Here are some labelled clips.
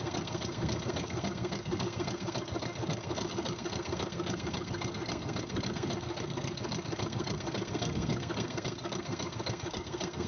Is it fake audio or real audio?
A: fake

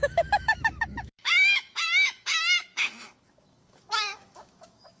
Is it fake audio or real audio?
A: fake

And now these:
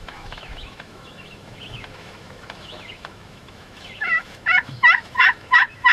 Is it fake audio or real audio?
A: fake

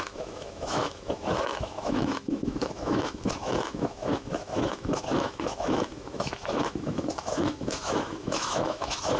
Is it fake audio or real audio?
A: fake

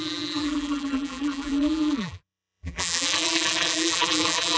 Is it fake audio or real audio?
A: fake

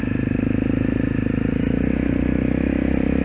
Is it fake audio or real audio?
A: real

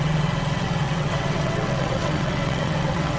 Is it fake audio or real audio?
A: fake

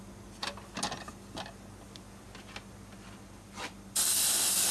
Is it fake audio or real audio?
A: real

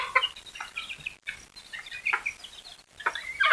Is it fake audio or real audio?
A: real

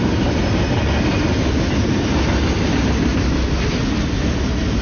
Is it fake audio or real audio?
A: real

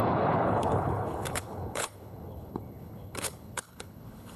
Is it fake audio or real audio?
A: fake